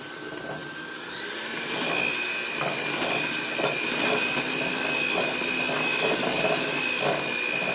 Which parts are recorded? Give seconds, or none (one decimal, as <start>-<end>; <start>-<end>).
0.0-7.7